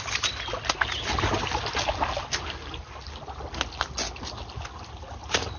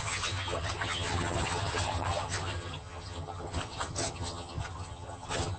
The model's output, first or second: second